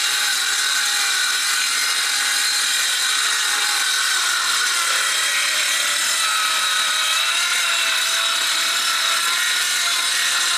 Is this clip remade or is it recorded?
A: recorded